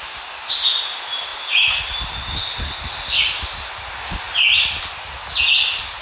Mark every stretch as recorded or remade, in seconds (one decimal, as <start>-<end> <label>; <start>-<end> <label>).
0.0-6.0 recorded